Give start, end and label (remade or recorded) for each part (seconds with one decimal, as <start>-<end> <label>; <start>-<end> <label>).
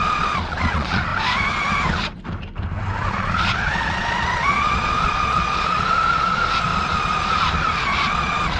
0.0-1.1 remade; 1.1-3.1 recorded; 3.1-6.7 remade; 6.7-8.1 recorded; 8.1-8.6 remade